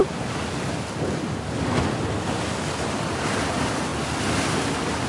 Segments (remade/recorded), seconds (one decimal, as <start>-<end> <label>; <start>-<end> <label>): 0.0-5.1 recorded